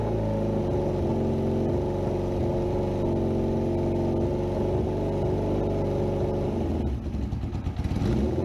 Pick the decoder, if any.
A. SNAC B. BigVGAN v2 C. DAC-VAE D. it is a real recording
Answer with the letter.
D